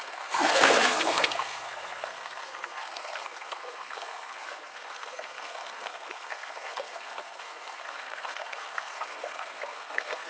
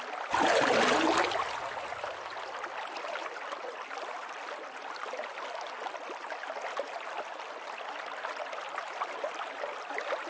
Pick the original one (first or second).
second